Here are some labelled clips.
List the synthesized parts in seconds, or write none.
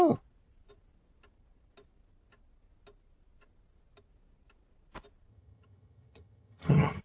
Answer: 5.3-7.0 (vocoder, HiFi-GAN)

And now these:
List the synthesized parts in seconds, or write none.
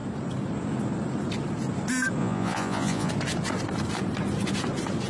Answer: 2.2-3.1 (vocoder, Vocos)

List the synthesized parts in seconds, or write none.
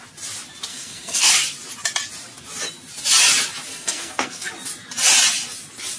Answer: 0.7-1.3 (codec, SNAC); 3.7-4.5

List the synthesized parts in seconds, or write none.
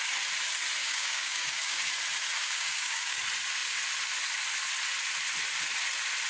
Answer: 0.8-1.9 (codec, DAC); 2.4-3.2